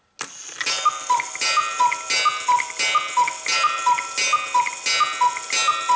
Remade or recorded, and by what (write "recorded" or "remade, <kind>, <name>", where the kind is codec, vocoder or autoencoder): recorded